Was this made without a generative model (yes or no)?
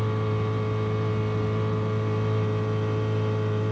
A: yes